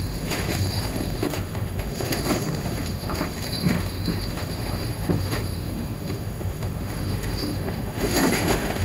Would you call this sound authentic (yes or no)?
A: no